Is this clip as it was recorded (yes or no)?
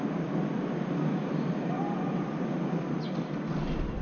yes